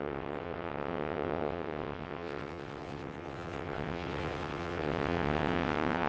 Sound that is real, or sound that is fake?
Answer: fake